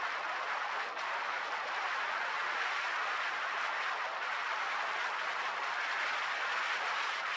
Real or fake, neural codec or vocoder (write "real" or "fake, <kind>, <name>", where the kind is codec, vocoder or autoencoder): real